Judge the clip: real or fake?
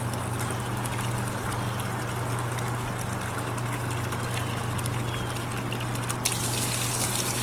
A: real